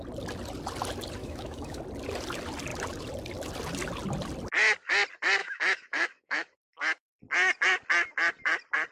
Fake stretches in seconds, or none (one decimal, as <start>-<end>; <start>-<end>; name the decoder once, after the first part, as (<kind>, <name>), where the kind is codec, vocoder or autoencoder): 1.2-1.8 (autoencoder, DAC-VAE); 5.4-7.2